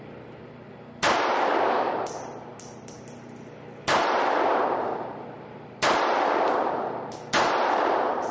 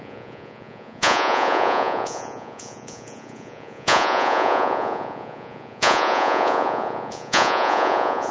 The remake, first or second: second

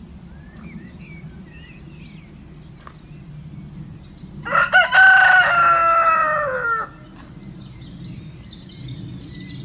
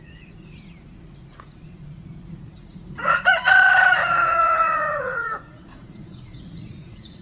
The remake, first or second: second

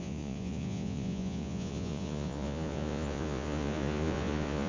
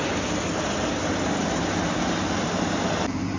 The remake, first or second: first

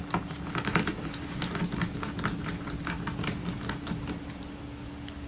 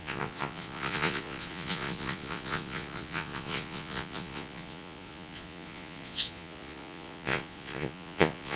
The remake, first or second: second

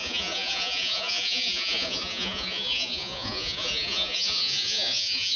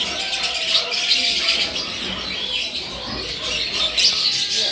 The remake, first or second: first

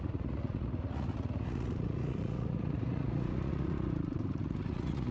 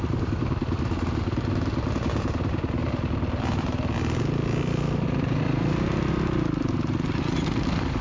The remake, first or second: first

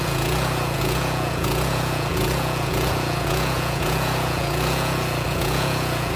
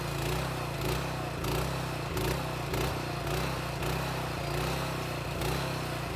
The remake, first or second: first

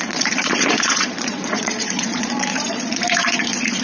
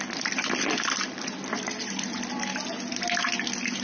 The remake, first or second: first